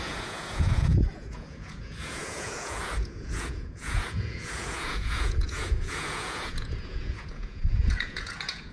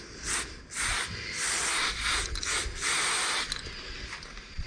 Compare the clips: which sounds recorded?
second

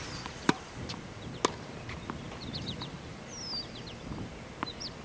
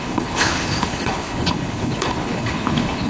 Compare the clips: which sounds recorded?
first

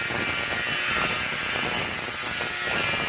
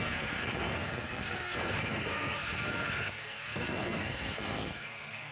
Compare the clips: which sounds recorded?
first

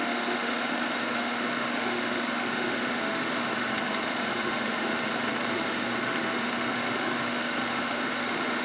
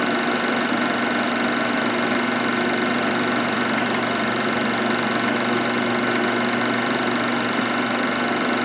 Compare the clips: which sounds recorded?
second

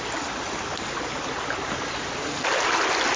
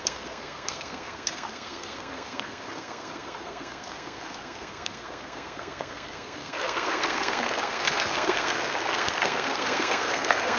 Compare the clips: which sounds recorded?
first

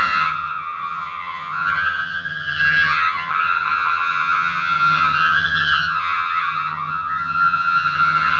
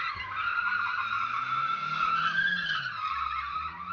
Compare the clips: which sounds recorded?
second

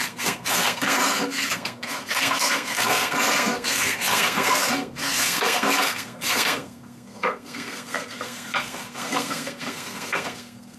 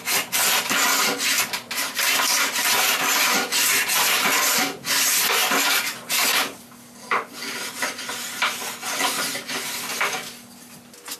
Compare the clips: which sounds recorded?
second